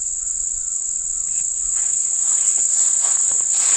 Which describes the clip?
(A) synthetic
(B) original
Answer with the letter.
A